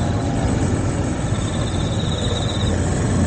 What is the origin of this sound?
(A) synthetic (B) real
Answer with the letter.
B